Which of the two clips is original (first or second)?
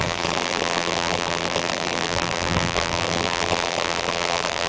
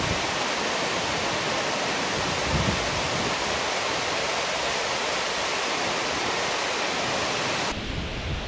second